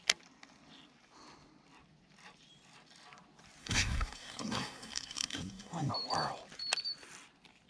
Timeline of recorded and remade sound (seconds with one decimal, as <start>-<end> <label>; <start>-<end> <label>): 0.0-3.6 recorded; 3.6-5.9 remade; 5.9-7.7 recorded